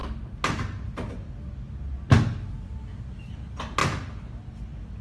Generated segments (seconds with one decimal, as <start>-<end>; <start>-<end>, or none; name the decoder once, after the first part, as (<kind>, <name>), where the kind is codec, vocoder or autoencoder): none